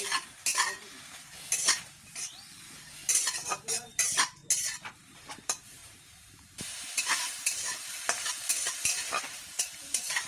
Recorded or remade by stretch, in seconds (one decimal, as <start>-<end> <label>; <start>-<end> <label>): 0.0-0.5 remade; 0.5-2.3 recorded; 2.3-3.0 remade; 3.0-3.9 recorded; 3.9-4.4 remade; 4.4-4.9 recorded; 4.9-10.3 remade